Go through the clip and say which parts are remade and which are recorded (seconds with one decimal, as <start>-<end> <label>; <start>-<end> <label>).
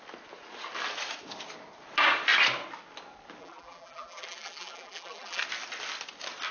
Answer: 0.0-3.4 recorded; 3.4-5.4 remade; 5.4-6.5 recorded